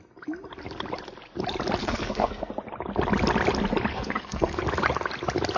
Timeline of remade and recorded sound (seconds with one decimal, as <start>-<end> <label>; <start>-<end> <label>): 0.0-1.8 recorded; 1.8-2.5 remade; 2.5-3.9 recorded; 3.9-4.6 remade; 4.6-5.6 recorded